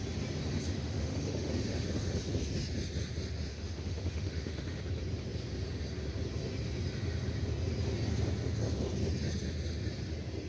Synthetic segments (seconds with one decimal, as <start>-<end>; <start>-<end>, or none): 0.7-1.5; 3.5-4.8